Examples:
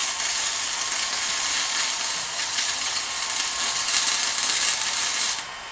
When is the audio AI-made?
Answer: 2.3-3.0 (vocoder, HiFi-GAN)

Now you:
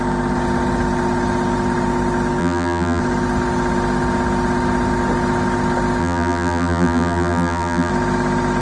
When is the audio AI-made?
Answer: 2.4-3.0 (vocoder, BigVGAN v2); 6.0-7.9

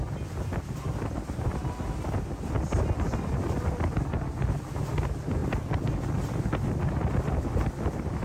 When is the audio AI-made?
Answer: none

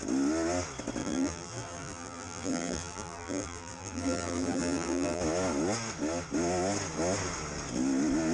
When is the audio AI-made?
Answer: 1.0-5.2 (vocoder, BigVGAN v2)

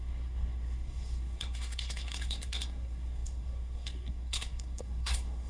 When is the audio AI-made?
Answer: 0.0-5.5 (codec, SNAC)

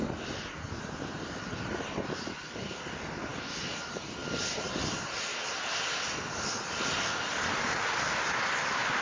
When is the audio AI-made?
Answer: 0.7-1.8 (vocoder, BigVGAN v2); 7.3-7.9

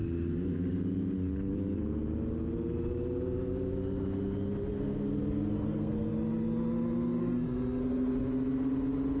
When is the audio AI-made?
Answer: 4.7-6.1 (codec, SNAC); 7.2-8.2

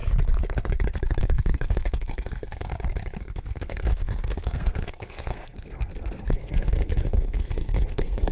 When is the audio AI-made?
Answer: 1.2-2.7 (codec, SNAC); 3.2-8.3